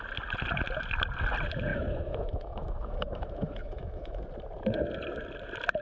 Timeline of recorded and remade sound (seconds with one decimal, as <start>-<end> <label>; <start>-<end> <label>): 0.0-1.7 recorded; 1.7-4.2 remade; 4.2-5.8 recorded